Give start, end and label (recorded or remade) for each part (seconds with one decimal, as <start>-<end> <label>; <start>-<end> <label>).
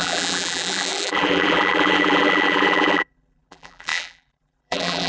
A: 0.0-5.1 remade